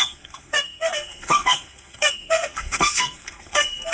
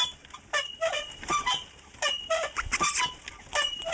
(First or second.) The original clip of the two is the second